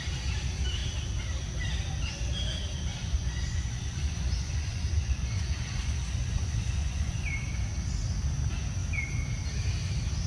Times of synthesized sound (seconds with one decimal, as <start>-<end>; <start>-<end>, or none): 2.9-7.2